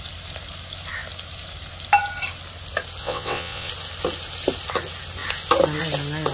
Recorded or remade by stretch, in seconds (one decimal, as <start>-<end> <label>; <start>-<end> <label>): 0.0-3.0 recorded; 3.0-3.7 remade; 3.7-6.3 recorded